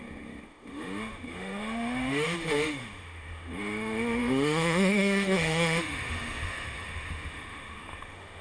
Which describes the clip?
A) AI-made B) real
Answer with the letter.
A